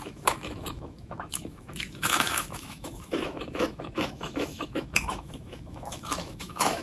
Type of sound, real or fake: fake